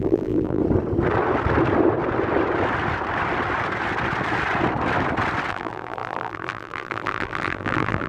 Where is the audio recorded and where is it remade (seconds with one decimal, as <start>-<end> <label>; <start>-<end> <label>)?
0.0-0.6 remade; 0.6-5.5 recorded; 5.5-8.1 remade